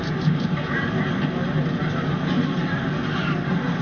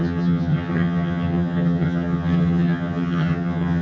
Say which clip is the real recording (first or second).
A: first